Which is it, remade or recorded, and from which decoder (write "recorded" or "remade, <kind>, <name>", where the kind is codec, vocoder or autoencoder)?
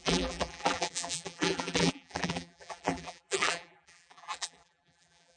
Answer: remade, vocoder, BigVGAN v2